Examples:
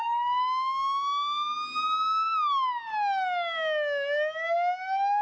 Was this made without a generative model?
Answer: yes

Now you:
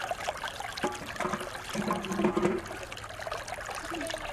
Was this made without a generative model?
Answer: yes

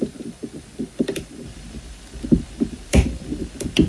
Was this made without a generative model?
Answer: no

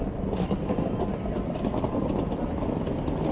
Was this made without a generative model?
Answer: yes